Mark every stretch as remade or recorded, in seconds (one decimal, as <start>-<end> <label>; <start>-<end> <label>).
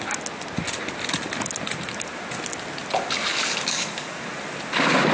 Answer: 0.0-3.3 recorded; 3.3-4.2 remade; 4.2-5.1 recorded